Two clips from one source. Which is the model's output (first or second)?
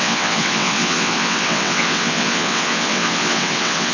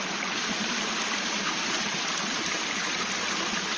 first